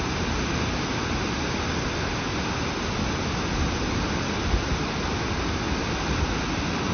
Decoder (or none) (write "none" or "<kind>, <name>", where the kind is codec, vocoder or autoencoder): none